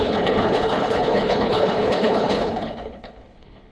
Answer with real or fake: fake